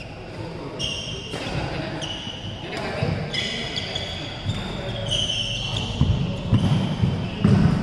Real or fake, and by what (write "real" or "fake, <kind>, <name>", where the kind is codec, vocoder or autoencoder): real